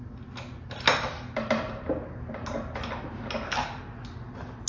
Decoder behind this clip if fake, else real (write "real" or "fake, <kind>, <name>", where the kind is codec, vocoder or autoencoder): real